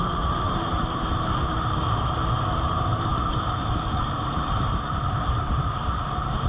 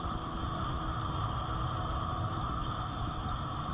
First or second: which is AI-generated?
first